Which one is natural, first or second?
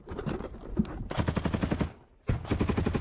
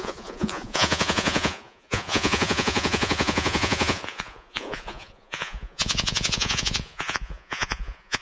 first